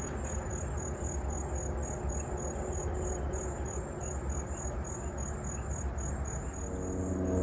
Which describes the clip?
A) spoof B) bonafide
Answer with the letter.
B